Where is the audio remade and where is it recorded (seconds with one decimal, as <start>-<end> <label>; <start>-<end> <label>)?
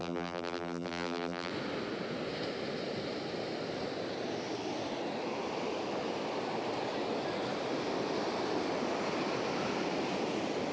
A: 0.0-1.5 remade; 1.5-10.7 recorded